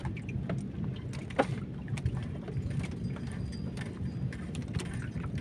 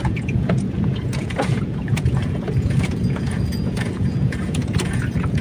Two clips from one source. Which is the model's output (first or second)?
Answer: second